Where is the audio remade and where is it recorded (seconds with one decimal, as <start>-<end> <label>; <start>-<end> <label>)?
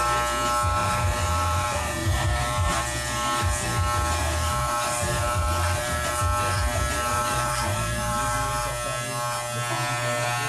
0.0-0.8 recorded; 0.8-2.7 remade; 2.7-4.2 recorded; 4.2-6.2 remade; 6.2-7.1 recorded; 7.1-8.6 remade; 8.6-10.5 recorded